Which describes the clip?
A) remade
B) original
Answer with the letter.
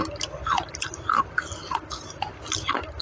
B